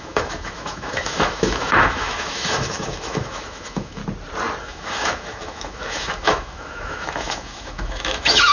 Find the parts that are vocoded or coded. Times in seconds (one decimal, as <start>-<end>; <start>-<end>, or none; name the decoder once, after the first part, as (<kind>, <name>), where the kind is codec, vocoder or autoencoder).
0.0-4.0 (autoencoder, DAC-VAE); 4.6-8.5